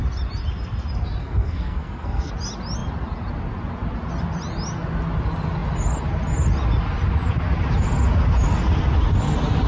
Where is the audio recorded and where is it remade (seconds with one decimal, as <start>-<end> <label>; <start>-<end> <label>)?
0.0-1.2 recorded; 1.2-2.3 remade; 2.3-9.7 recorded

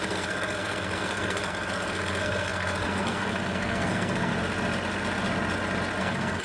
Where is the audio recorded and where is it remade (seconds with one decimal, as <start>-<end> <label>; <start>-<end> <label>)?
0.0-4.3 remade; 4.3-6.0 recorded; 6.0-6.4 remade

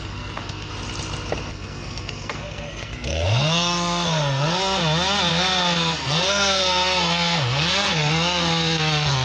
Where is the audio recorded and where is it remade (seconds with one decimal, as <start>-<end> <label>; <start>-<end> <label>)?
0.0-0.7 remade; 0.7-1.5 recorded; 1.5-4.8 remade; 4.8-5.3 recorded; 5.3-9.2 remade

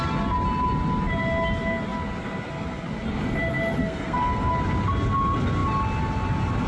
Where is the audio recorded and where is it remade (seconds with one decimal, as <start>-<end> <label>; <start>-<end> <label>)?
0.0-3.8 recorded; 3.8-4.5 remade; 4.5-6.7 recorded

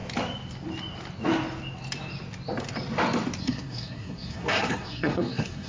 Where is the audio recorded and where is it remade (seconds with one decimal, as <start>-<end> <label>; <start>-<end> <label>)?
0.0-3.4 recorded; 3.4-5.7 remade

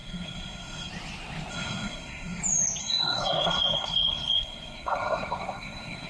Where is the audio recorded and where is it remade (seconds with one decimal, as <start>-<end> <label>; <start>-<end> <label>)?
0.0-0.9 remade; 0.9-1.5 recorded; 1.5-2.4 remade; 2.4-2.8 recorded; 2.8-6.1 remade

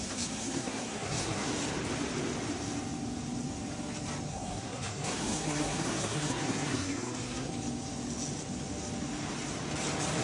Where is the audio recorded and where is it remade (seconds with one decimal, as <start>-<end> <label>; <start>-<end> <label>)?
0.0-1.5 remade; 1.5-4.3 recorded; 4.3-7.5 remade; 7.5-10.2 recorded

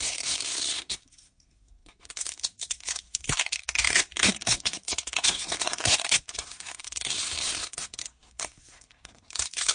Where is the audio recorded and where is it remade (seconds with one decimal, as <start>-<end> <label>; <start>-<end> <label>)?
0.0-9.7 remade